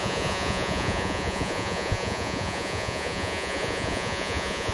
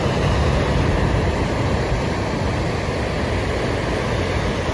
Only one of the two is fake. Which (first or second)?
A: first